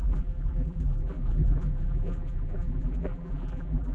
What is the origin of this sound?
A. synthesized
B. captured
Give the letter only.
A